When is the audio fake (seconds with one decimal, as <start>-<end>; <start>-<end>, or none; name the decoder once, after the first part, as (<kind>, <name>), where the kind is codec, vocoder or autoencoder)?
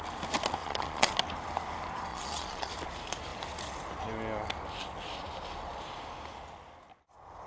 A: 0.6-1.1 (vocoder, Vocos); 2.1-2.7